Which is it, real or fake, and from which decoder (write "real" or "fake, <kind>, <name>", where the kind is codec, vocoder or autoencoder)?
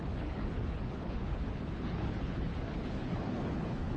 fake, codec, HILCodec